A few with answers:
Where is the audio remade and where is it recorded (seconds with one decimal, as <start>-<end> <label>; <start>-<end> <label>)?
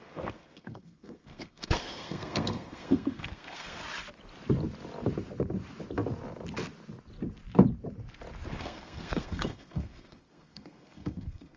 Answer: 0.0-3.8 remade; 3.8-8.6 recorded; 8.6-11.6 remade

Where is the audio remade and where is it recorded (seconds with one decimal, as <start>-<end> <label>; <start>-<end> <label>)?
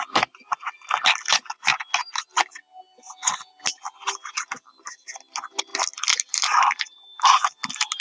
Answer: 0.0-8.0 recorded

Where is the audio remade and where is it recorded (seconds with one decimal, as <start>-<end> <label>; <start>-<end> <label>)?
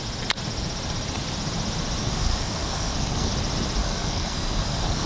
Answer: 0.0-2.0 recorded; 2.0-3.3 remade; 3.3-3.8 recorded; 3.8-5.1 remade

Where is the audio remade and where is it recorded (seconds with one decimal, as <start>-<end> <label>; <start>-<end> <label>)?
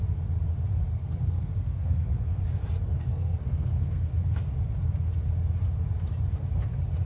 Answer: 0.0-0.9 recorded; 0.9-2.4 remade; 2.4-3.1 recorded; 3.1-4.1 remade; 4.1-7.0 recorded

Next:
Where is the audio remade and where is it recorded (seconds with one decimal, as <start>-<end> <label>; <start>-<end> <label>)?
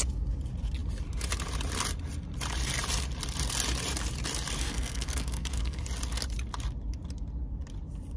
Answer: 0.0-4.6 recorded; 4.6-5.8 remade; 5.8-8.2 recorded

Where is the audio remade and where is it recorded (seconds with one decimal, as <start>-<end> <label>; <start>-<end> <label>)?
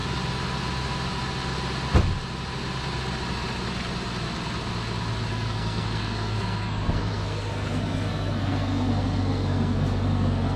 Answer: 0.0-5.3 recorded; 5.3-10.6 remade